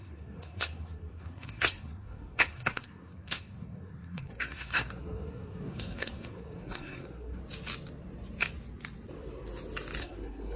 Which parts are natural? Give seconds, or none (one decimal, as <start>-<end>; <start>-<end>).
7.4-10.0